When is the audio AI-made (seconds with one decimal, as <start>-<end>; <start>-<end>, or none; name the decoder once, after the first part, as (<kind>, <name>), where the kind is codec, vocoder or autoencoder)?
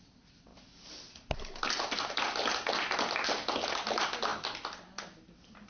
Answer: none